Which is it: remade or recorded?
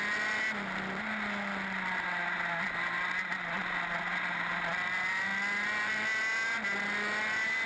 recorded